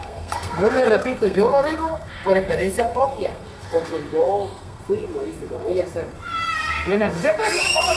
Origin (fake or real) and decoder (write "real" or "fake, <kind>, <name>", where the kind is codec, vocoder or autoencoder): fake, codec, SNAC